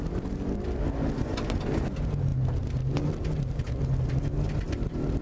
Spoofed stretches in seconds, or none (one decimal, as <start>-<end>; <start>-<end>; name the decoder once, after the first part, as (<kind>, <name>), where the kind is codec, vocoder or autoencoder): none